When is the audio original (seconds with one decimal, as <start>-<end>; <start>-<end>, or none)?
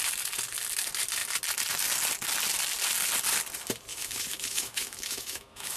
0.0-3.9